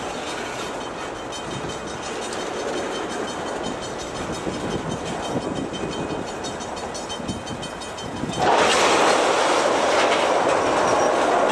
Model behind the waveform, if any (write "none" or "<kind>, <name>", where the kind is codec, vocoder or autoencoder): none